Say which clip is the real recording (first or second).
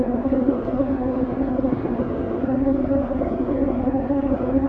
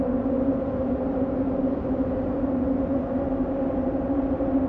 second